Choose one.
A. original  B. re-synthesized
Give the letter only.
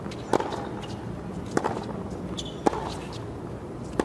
A